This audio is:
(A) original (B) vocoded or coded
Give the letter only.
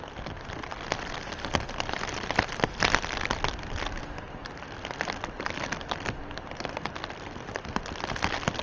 A